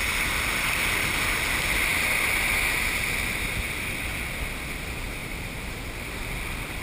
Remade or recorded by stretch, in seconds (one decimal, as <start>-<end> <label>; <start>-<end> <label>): 0.0-5.2 recorded; 5.2-5.8 remade; 5.8-6.8 recorded